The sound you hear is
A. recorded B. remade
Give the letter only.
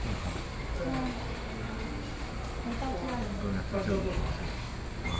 A